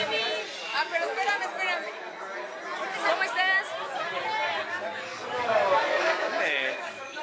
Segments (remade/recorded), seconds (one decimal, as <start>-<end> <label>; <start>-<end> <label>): 0.0-0.6 recorded; 0.6-1.3 remade; 1.3-5.1 recorded; 5.1-7.2 remade